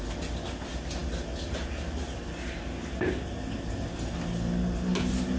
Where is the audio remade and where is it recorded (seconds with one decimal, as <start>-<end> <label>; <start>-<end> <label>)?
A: 0.0-5.4 recorded